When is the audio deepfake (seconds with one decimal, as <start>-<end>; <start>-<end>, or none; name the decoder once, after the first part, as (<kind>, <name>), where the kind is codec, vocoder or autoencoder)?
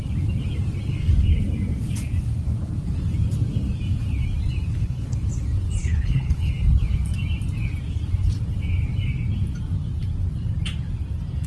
4.7-5.3 (codec, HILCodec); 5.8-6.5